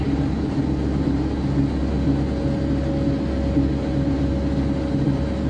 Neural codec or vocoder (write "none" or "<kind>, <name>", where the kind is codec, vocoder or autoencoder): none